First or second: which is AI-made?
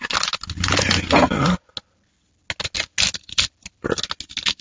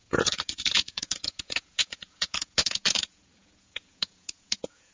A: second